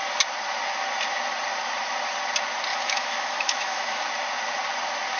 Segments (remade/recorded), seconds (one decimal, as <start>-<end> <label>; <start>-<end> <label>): 0.0-2.7 recorded; 2.7-4.0 remade; 4.0-5.2 recorded